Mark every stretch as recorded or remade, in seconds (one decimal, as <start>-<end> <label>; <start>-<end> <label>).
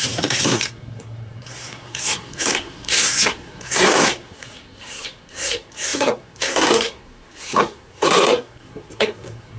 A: 0.0-9.6 remade